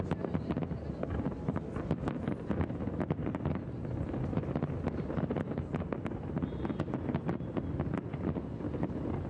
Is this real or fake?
real